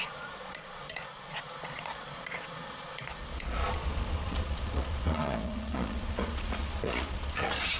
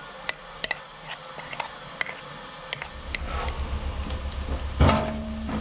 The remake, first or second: first